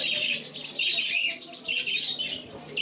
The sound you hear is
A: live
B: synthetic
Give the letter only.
B